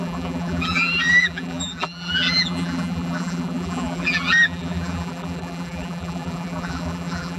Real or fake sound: fake